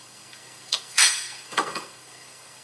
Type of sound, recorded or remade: remade